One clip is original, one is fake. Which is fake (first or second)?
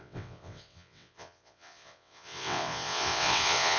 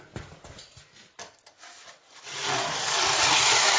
first